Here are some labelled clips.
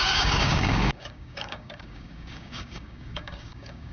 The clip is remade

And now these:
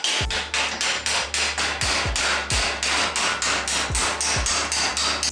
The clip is recorded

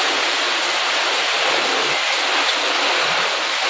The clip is recorded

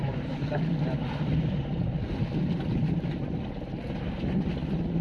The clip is recorded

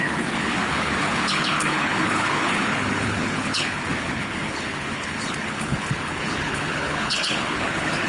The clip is remade